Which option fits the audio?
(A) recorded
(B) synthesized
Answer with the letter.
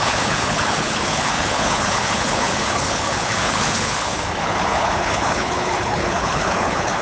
B